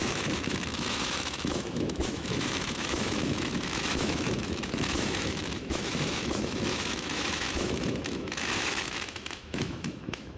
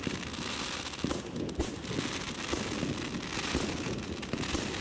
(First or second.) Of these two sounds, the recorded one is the second